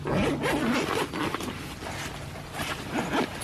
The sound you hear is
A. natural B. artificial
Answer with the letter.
A